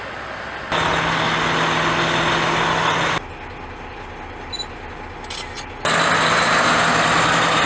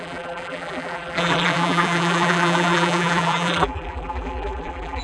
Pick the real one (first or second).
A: first